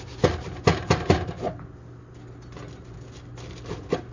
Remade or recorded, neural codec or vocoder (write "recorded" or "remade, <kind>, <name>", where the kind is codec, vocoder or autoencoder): recorded